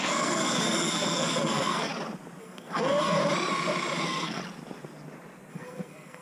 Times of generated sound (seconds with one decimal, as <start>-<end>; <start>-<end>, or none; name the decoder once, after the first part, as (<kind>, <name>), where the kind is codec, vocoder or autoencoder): 0.0-1.9 (codec, SNAC); 2.4-3.2; 4.0-4.4; 5.5-6.2